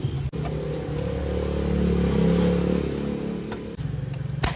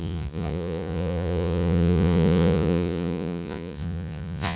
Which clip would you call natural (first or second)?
first